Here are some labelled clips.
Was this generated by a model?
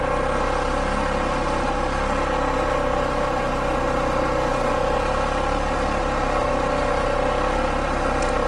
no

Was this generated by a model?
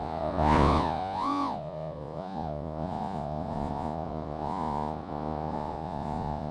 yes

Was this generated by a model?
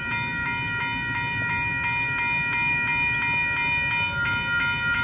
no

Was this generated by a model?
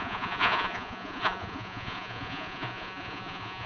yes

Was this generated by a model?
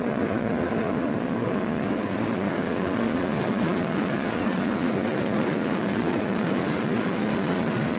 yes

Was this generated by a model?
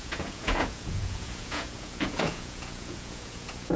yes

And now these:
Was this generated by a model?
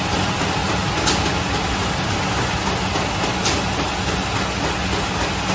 no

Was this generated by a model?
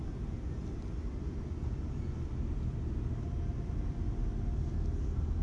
no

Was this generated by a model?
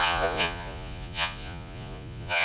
yes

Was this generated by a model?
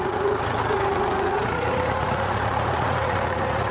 yes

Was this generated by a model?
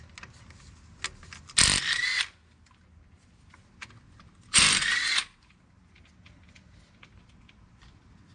no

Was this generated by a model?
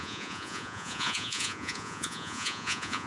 yes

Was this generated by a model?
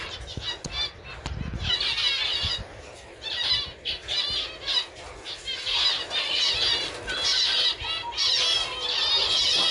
no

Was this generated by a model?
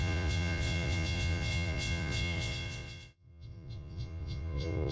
yes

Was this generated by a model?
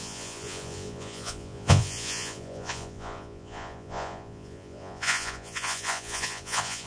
yes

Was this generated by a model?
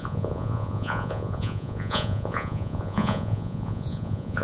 yes